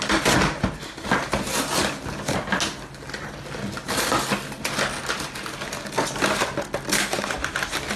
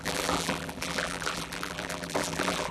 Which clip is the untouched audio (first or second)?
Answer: first